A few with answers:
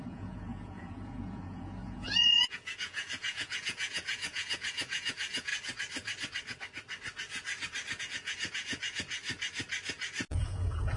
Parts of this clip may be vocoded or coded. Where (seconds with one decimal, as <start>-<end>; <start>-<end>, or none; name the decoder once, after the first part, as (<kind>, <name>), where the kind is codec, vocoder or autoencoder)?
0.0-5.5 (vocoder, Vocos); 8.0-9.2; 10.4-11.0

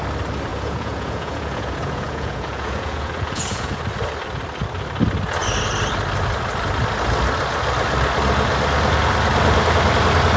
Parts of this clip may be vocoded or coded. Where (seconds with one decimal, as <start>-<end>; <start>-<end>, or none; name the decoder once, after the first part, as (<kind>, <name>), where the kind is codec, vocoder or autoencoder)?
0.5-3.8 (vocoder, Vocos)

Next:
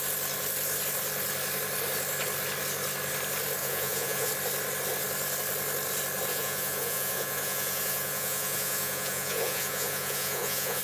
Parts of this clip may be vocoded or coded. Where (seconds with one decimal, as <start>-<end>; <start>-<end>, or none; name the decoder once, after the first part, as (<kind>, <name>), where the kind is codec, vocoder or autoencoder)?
3.6-4.3 (vocoder, Vocos); 6.3-10.8